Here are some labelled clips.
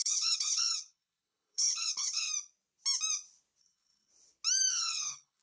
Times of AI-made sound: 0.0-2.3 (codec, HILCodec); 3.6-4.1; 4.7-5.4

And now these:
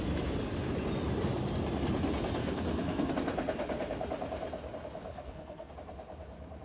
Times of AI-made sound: 2.4-3.1 (codec, SNAC); 5.1-5.7

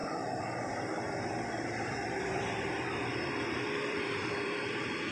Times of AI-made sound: 0.0-5.1 (vocoder, BigVGAN v2)